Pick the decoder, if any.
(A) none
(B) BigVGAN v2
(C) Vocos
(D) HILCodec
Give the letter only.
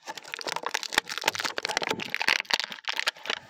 A